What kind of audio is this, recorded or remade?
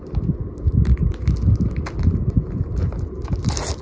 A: recorded